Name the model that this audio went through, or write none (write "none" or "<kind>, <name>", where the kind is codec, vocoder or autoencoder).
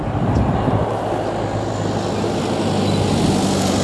none